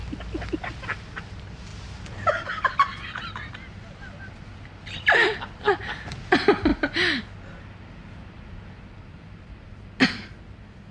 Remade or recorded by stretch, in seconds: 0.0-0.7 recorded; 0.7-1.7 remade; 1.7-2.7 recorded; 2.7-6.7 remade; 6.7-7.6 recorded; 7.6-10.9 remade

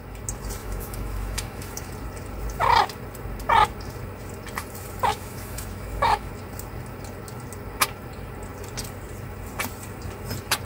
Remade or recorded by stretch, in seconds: 0.0-0.6 recorded; 0.6-1.9 remade; 1.9-5.1 recorded; 5.1-6.3 remade; 6.3-10.6 recorded

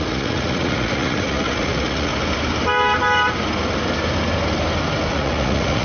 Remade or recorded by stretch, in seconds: 0.0-2.1 remade; 2.1-5.1 recorded; 5.1-5.8 remade

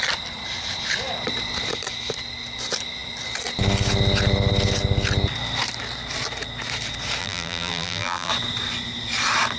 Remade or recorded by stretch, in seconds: 0.0-7.2 recorded; 7.2-8.3 remade; 8.3-9.6 recorded

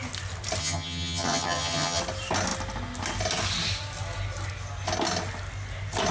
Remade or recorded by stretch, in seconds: 0.0-0.6 recorded; 0.6-2.0 remade; 2.0-6.1 recorded

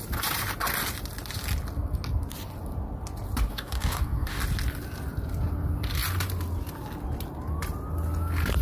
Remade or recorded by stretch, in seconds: 0.0-3.5 recorded; 3.5-4.4 remade; 4.4-8.6 recorded